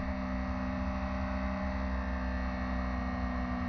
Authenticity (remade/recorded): recorded